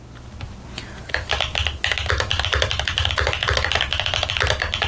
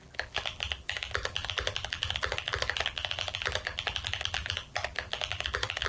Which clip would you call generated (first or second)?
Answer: second